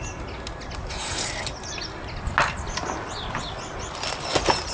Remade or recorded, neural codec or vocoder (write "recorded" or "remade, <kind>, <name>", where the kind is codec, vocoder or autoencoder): recorded